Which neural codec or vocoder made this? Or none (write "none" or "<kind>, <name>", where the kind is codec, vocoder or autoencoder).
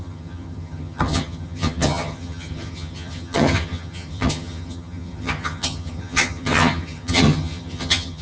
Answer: vocoder, HiFi-GAN